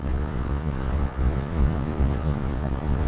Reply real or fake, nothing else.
fake